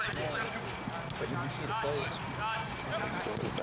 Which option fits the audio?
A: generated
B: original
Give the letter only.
B